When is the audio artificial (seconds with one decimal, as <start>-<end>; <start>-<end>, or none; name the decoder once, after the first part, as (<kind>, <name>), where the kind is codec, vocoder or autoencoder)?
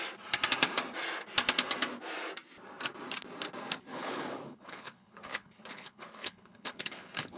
3.9-7.4 (codec, HILCodec)